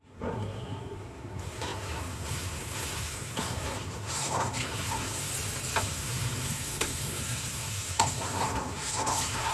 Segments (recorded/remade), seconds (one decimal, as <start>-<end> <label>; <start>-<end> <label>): 0.0-5.3 remade; 5.3-5.8 recorded; 5.8-9.5 remade